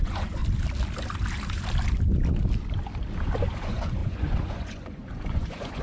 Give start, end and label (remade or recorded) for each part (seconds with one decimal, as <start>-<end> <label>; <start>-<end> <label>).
0.0-0.4 remade; 0.4-3.4 recorded; 3.4-5.8 remade